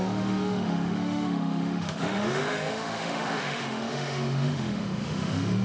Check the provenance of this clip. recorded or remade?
remade